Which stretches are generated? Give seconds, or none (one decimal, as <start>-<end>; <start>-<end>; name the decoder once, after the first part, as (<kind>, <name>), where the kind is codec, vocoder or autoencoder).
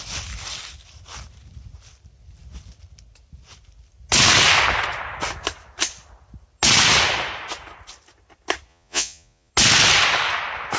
8.7-9.5 (vocoder, Vocos)